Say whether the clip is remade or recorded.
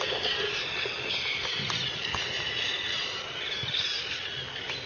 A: recorded